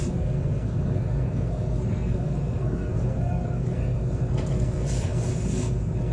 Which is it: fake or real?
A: fake